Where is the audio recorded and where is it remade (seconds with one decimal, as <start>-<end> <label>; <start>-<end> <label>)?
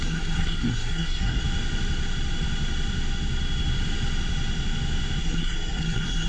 0.0-1.4 remade; 1.4-5.2 recorded; 5.2-6.3 remade